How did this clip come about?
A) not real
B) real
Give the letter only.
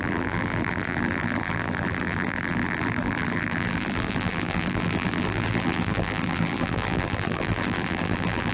A